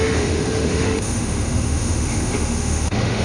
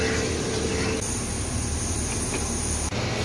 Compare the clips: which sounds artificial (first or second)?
first